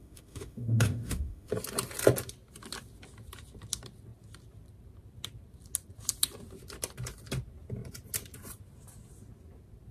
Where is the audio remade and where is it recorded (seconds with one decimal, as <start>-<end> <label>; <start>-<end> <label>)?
0.0-1.5 remade; 1.5-9.9 recorded